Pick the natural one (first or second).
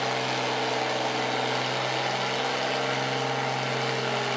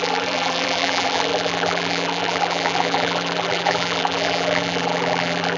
first